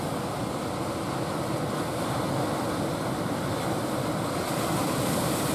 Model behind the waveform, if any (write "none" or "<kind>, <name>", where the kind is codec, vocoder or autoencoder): none